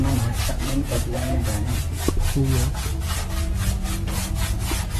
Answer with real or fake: real